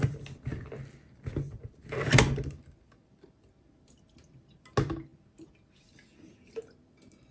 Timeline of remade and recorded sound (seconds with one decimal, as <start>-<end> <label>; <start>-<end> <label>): 0.0-7.3 recorded